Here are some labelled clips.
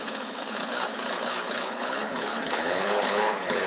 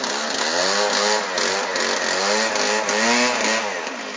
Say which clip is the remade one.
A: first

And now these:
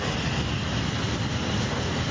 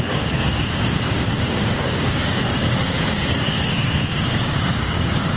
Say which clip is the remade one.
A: second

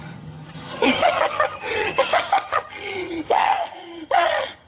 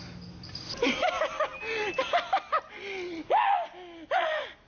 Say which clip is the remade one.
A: first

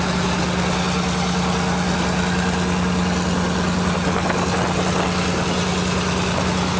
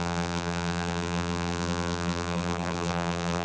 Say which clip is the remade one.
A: second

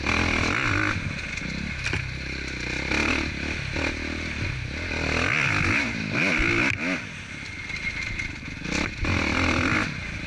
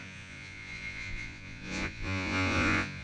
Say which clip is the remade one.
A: second